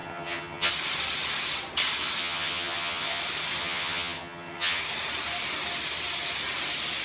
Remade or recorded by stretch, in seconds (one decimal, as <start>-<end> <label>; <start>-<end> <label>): 0.0-0.7 remade; 0.7-2.2 recorded; 2.2-3.2 remade; 3.2-3.6 recorded; 3.6-4.8 remade; 4.8-7.0 recorded